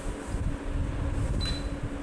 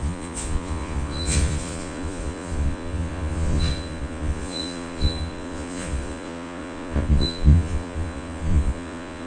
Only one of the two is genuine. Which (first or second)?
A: first